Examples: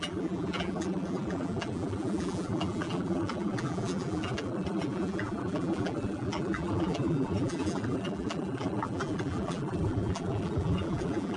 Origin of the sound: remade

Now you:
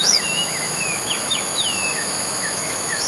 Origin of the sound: remade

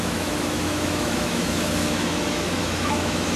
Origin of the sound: remade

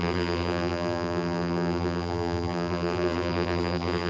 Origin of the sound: remade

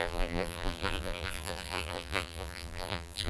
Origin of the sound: remade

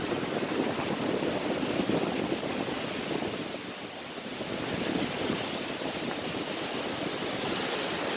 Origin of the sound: recorded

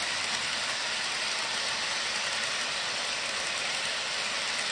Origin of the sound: recorded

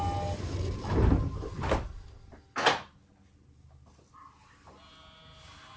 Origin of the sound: recorded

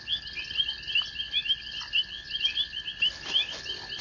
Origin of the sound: recorded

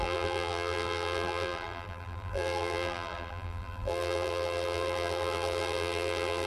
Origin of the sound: remade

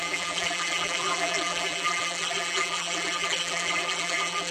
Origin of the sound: remade